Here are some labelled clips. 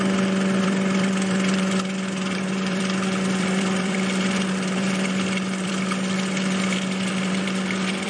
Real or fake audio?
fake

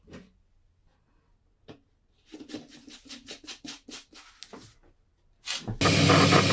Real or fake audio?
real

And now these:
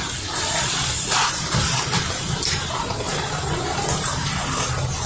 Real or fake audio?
real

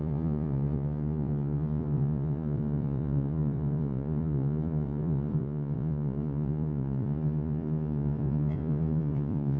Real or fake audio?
fake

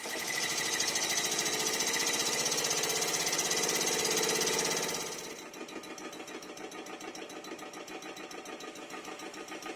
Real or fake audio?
real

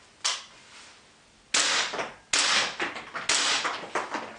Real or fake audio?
real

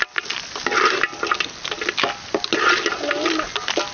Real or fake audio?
real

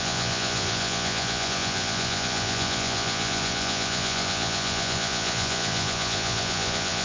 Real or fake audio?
fake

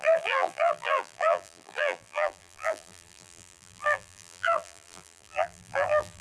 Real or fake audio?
fake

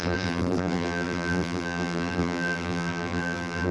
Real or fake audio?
fake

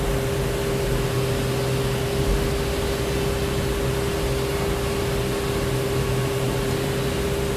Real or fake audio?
real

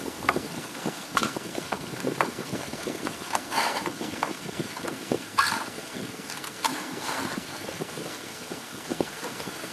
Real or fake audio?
fake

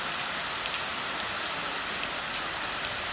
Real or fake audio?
real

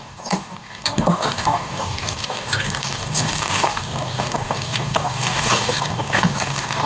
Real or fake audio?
fake